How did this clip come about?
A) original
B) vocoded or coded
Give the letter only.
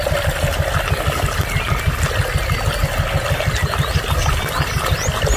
A